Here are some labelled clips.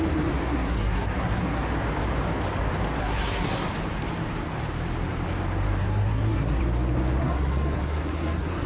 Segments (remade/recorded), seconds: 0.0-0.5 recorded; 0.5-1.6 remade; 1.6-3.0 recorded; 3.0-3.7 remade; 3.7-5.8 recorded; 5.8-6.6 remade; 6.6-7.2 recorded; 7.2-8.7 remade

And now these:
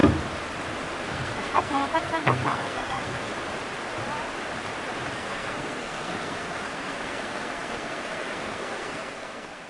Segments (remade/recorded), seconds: 0.0-1.0 recorded; 1.0-3.3 remade; 3.3-5.1 recorded; 5.1-9.7 remade

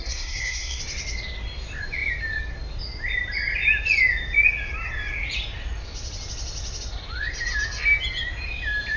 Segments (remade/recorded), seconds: 0.0-0.8 remade; 0.8-9.0 recorded